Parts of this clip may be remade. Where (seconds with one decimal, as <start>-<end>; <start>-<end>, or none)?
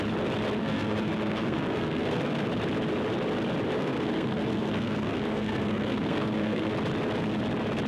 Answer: 0.6-2.5; 3.8-6.7